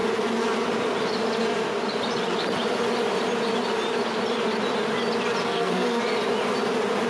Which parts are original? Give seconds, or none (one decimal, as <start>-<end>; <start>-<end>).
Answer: 0.0-5.4; 6.0-7.1